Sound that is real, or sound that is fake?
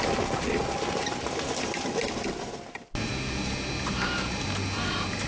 real